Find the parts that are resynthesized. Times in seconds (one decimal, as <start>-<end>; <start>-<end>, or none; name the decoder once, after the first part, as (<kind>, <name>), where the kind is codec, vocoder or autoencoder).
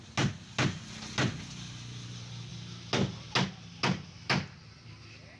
none